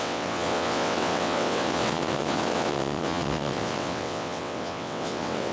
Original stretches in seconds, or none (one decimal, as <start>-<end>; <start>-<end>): none